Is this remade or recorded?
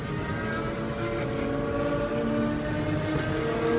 recorded